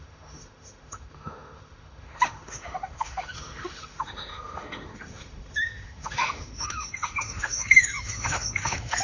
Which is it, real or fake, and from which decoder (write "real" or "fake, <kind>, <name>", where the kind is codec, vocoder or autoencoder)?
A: fake, autoencoder, DAC-VAE